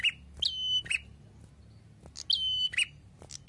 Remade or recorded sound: recorded